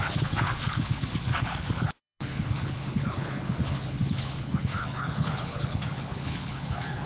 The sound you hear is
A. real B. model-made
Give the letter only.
B